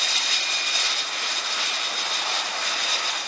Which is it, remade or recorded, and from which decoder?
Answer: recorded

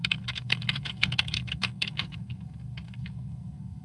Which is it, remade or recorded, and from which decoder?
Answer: remade, codec, SNAC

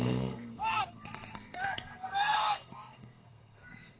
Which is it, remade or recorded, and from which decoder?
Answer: remade, codec, SNAC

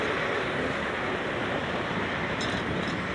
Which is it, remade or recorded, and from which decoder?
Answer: recorded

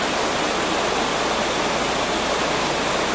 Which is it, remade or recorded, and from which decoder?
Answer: recorded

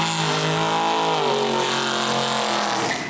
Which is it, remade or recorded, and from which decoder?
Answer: recorded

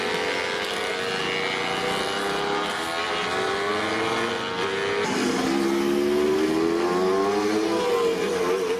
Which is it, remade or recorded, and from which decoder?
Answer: recorded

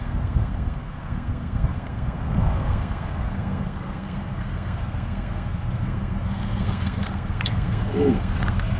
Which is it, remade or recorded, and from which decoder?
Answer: remade, codec, SNAC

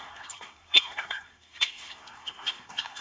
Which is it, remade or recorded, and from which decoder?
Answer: remade, codec, SNAC